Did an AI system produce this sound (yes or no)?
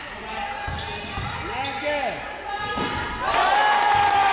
no